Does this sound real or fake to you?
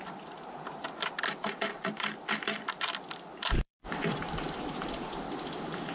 fake